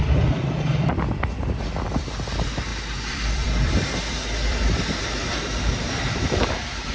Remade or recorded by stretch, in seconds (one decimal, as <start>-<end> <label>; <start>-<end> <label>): 0.0-2.7 recorded; 2.7-6.9 remade